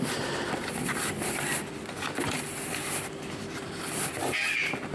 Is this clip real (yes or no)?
yes